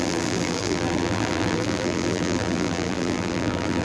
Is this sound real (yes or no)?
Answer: no